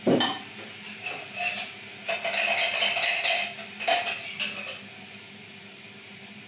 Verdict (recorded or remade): recorded